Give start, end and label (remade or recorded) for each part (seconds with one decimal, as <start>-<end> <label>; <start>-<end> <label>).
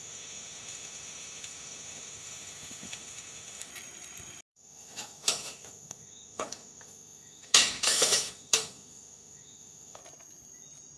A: 0.0-3.7 remade; 3.7-4.5 recorded; 4.5-10.0 remade; 10.0-11.0 recorded